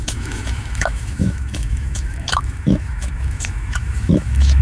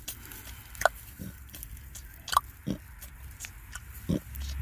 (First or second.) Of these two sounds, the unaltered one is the second